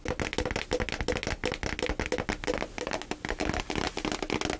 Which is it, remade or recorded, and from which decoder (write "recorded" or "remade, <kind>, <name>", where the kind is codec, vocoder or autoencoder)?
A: recorded